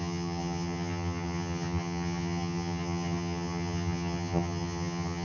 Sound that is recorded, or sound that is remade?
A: remade